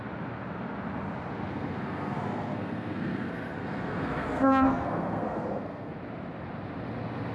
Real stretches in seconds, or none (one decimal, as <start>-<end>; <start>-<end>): 0.0-1.5; 5.9-7.3